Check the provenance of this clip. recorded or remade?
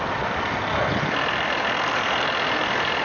recorded